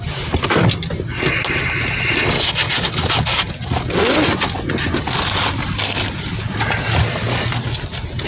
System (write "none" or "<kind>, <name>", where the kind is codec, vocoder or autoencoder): none